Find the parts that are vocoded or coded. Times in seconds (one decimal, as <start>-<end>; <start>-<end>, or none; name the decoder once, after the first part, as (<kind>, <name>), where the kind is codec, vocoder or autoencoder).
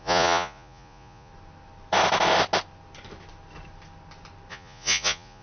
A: 0.0-1.3 (vocoder, Vocos); 4.5-5.4